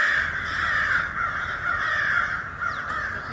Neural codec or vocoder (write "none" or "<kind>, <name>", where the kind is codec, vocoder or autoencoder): none